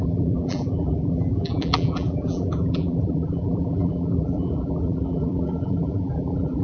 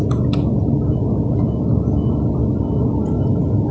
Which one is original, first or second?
second